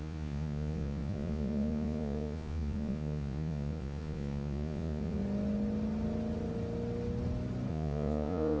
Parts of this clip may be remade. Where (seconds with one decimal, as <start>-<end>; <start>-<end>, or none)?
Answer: 0.0-5.2; 7.7-8.6